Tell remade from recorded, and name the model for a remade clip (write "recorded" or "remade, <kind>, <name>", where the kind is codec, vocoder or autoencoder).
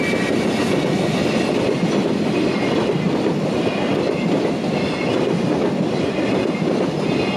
recorded